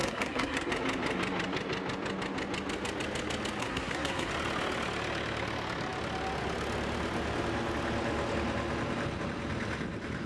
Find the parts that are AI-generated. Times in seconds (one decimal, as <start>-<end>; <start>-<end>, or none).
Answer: 0.0-0.7; 3.6-4.3